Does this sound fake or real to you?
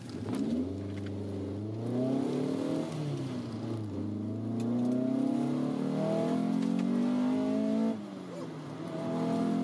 real